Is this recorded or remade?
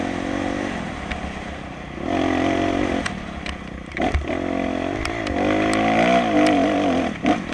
recorded